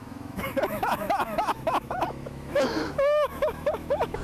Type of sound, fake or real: fake